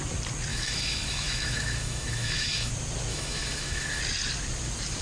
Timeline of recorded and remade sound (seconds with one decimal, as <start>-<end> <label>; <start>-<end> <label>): 0.0-0.5 recorded; 0.5-2.7 remade; 2.7-3.1 recorded; 3.1-4.0 remade; 4.0-5.0 recorded